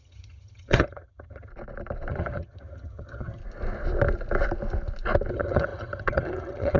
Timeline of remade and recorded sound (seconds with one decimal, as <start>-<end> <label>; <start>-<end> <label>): 0.0-1.5 remade; 1.5-2.1 recorded; 2.1-3.4 remade; 3.4-5.3 recorded; 5.3-6.8 remade